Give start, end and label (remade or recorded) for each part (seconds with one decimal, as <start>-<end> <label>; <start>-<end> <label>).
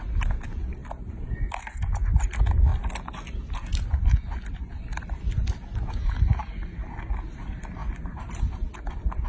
0.0-9.3 recorded